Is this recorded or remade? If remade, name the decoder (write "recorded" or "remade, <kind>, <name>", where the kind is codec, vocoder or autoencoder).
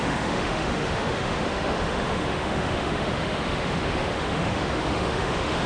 remade, autoencoder, DAC-VAE